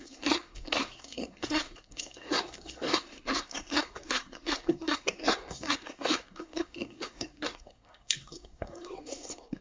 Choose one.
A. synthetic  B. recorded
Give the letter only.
A